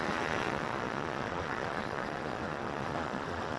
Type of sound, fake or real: fake